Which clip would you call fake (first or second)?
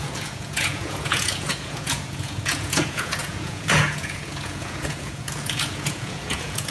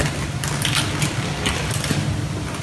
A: first